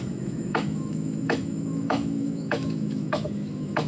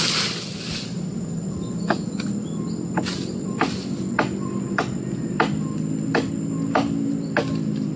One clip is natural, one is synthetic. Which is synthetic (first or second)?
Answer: first